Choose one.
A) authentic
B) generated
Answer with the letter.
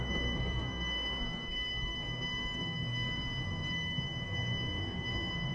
B